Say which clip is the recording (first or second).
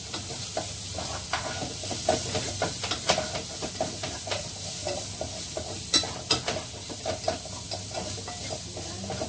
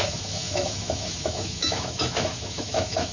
first